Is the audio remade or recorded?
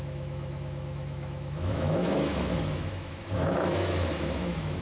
remade